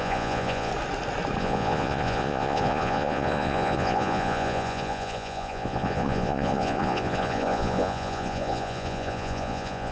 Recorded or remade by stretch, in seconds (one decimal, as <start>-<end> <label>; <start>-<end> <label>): 0.0-0.7 remade; 0.7-1.4 recorded; 1.4-9.9 remade